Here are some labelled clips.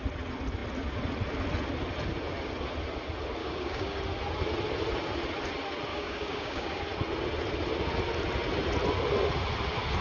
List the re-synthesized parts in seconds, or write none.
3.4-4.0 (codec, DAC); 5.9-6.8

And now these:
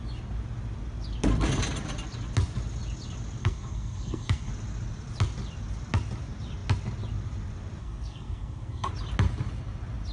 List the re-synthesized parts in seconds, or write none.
3.4-4.5 (codec, SNAC); 7.8-8.9

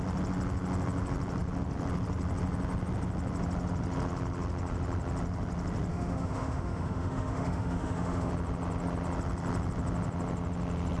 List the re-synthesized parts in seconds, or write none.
5.9-8.3 (autoencoder, DAC-VAE)